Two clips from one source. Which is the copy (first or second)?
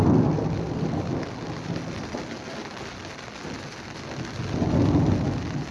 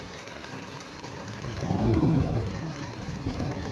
second